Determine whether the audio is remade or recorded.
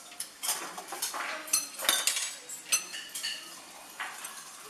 recorded